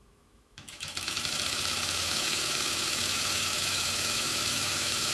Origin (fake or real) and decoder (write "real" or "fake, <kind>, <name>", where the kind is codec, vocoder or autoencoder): fake, autoencoder, DAC-VAE